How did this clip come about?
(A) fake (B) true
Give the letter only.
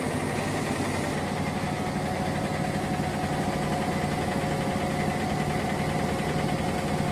B